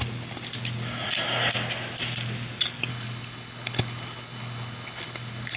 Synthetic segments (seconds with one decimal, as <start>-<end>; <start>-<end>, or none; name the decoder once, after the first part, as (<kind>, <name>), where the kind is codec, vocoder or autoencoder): 2.9-5.6 (codec, HILCodec)